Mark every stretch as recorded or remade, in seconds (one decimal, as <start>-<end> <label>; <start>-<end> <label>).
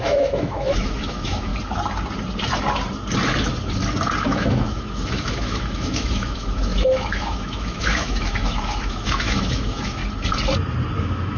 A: 0.0-1.5 remade; 1.5-4.2 recorded; 4.2-10.0 remade; 10.0-11.0 recorded; 11.0-11.4 remade